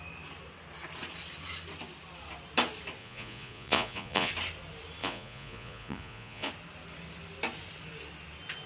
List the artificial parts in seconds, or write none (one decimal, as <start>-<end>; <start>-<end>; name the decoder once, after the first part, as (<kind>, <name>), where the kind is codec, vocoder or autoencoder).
3.0-4.3 (vocoder, Vocos); 5.0-6.5